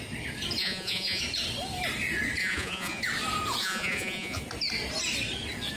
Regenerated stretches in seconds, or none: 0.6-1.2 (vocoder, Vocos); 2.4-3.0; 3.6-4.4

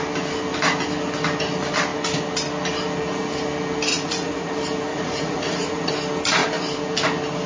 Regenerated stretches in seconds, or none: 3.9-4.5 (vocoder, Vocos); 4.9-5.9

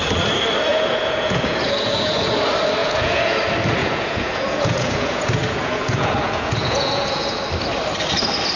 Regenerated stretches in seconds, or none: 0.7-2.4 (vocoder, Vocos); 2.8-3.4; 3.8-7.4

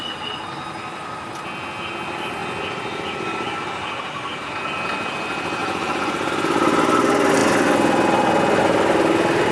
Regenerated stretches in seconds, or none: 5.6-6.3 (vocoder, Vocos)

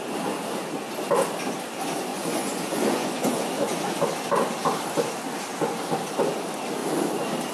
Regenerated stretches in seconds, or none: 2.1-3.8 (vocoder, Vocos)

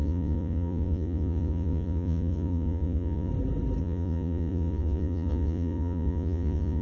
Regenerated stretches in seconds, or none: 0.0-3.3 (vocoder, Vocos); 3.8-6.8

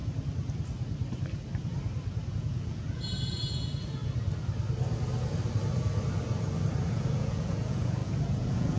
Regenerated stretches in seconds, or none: 2.3-4.0 (vocoder, Vocos); 6.9-8.8